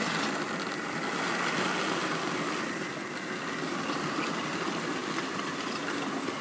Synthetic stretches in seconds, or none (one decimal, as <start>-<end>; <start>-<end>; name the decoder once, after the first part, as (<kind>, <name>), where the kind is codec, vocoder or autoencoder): 5.0-6.4 (vocoder, BigVGAN v2)